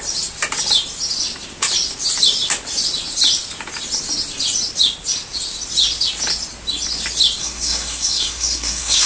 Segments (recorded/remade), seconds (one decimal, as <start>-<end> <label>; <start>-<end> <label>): 0.0-7.4 recorded; 7.4-9.1 remade